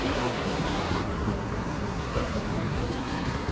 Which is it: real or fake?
fake